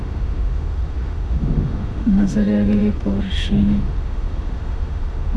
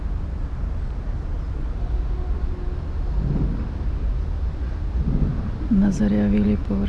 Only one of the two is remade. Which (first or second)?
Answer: first